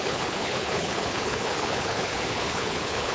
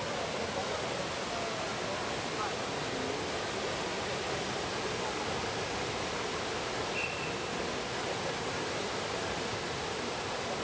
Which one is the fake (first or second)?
first